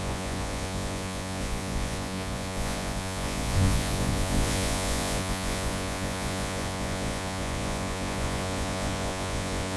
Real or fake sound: fake